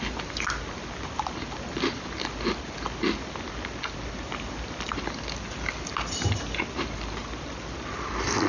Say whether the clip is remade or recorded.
recorded